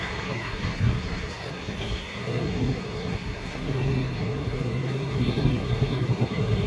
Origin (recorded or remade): remade